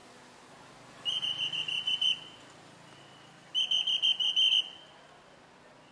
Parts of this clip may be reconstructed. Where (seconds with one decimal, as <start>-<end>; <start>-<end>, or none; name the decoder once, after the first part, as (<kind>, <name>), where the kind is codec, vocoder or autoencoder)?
none